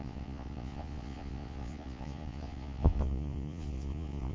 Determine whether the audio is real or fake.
fake